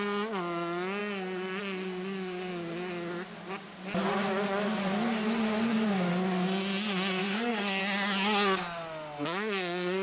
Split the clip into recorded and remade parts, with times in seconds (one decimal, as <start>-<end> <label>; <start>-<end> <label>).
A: 0.0-7.2 recorded; 7.2-7.8 remade; 7.8-10.0 recorded